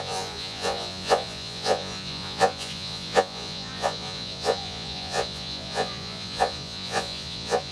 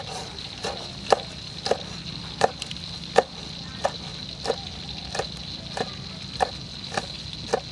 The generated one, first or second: first